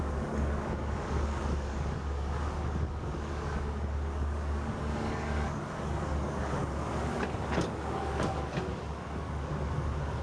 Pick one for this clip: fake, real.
fake